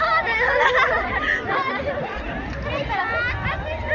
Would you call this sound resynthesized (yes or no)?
no